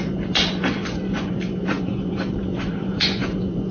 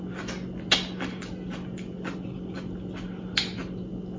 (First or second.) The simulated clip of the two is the first